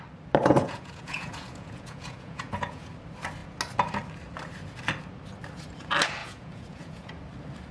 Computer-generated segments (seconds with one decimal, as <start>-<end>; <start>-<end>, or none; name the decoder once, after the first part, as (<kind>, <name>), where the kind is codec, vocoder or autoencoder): 0.4-2.9 (vocoder, Vocos); 6.2-7.1